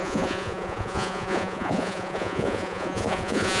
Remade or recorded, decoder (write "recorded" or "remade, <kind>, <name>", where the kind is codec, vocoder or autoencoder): remade, vocoder, Vocos